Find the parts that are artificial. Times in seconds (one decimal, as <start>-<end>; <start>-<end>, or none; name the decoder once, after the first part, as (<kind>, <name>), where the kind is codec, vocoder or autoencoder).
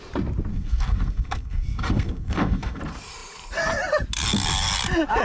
0.5-2.8 (codec, SNAC)